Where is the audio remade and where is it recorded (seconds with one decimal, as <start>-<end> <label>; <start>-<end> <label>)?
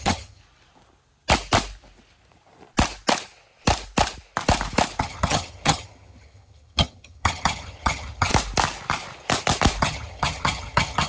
0.0-0.4 remade; 0.4-5.0 recorded; 5.0-8.3 remade; 8.3-9.8 recorded; 9.8-11.1 remade